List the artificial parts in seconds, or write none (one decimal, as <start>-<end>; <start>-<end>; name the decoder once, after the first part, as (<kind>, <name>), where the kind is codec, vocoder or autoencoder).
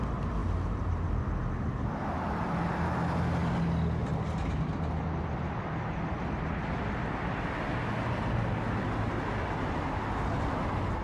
none